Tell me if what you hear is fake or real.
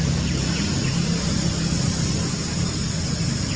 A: real